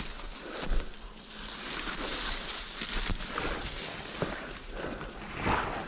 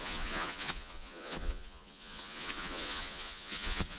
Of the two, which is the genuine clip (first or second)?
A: first